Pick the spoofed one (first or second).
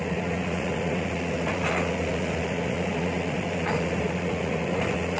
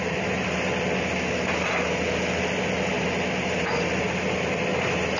first